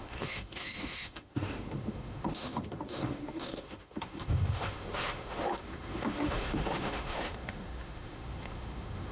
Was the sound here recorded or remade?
remade